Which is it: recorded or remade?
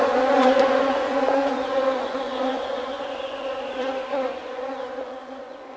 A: remade